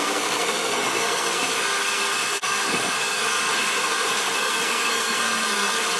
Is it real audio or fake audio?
fake